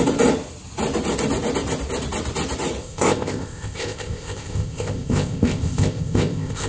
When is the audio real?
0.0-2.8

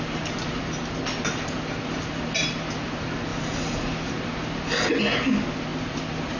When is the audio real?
0.0-5.7

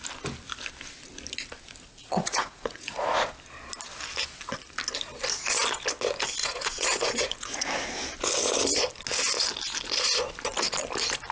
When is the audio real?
0.0-2.0; 3.2-6.4; 7.7-11.3

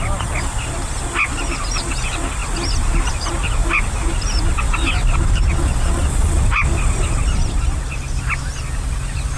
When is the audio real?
0.0-5.5; 6.4-9.4

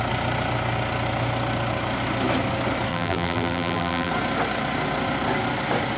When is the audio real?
0.0-2.9; 4.1-6.0

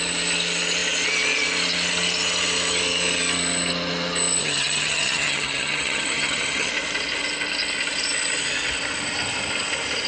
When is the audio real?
0.0-4.4; 6.7-10.1